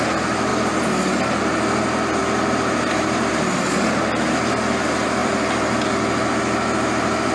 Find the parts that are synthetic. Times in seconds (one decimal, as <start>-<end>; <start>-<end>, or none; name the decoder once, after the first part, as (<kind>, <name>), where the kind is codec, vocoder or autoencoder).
2.2-3.3 (vocoder, BigVGAN v2); 5.2-6.4